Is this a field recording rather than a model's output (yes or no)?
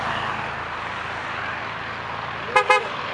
yes